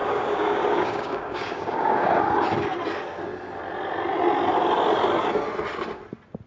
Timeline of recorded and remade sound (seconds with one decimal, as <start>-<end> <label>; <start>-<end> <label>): 0.0-2.1 remade; 2.1-6.5 recorded